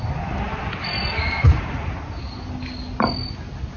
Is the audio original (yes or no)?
yes